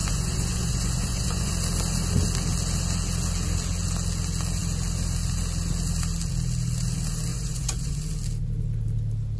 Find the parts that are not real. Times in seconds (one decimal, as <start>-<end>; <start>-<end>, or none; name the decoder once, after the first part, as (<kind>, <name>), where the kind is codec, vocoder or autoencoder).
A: 0.0-1.5 (vocoder, Vocos); 7.3-8.0